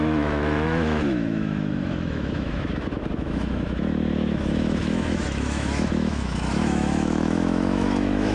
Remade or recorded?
remade